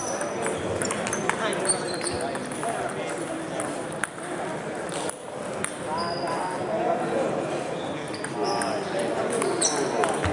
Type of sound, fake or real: real